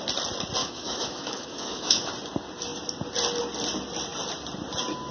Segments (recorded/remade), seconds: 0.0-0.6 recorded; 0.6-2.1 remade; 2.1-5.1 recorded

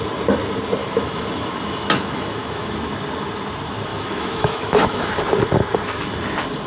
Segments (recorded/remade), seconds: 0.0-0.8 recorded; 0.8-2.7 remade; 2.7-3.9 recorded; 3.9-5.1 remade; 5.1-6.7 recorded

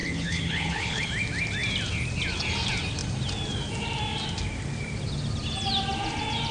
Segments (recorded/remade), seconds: 0.0-1.1 remade; 1.1-6.5 recorded

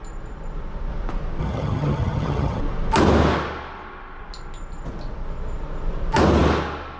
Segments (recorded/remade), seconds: 0.0-1.4 recorded; 1.4-2.6 remade; 2.6-7.0 recorded

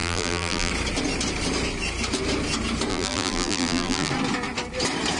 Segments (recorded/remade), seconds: 0.0-0.7 remade; 0.7-2.9 recorded; 2.9-4.1 remade; 4.1-5.2 recorded

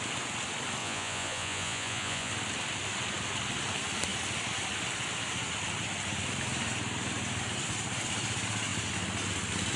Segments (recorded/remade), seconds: 0.0-0.8 recorded; 0.8-2.3 remade; 2.3-9.8 recorded